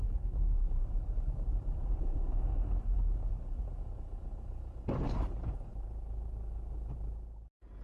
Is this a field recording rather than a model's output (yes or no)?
no